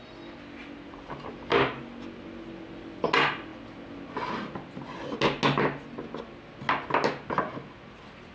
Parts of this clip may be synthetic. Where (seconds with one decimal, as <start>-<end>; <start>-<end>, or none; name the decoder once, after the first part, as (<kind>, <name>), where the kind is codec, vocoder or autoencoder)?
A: none